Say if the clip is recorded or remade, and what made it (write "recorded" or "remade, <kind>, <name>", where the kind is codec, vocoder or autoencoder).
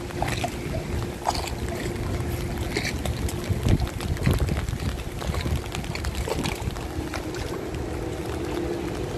recorded